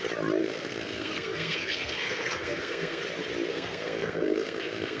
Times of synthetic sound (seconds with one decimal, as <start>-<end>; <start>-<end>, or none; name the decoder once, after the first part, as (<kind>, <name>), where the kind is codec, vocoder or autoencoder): 0.4-3.0 (codec, SNAC); 3.5-5.0